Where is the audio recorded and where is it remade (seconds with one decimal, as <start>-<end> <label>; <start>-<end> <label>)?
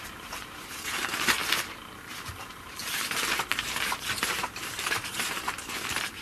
0.0-1.4 remade; 1.4-2.0 recorded; 2.0-6.2 remade